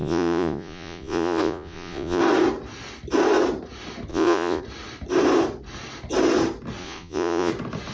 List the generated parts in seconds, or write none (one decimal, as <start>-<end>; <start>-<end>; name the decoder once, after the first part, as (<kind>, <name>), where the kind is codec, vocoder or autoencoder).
0.0-2.2 (vocoder, Vocos); 4.1-4.6; 6.8-7.5